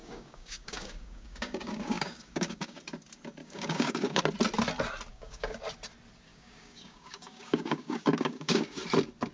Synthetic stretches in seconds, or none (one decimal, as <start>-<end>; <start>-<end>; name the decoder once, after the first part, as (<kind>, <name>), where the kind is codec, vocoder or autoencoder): 0.0-2.8 (codec, DAC); 3.4-4.2; 5.1-5.6; 6.3-8.8